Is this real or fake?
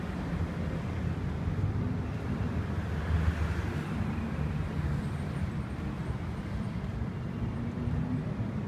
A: fake